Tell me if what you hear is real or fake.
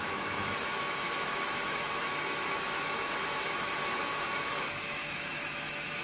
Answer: fake